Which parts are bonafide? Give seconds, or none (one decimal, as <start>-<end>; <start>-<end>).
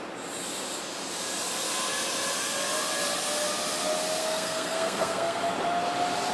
0.0-4.2; 5.4-6.3